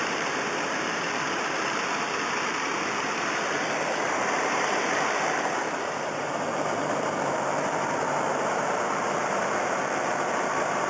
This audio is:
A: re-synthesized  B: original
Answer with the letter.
A